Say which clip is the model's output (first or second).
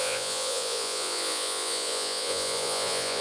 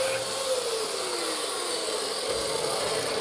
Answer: first